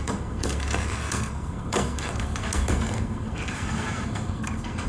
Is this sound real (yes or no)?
no